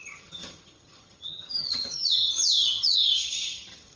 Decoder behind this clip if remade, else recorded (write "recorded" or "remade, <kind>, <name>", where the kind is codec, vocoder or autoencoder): remade, vocoder, HiFi-GAN